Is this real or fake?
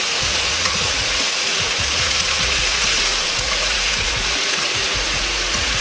fake